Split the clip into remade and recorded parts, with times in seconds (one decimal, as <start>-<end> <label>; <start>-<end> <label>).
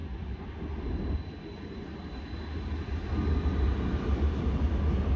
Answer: 0.0-5.2 recorded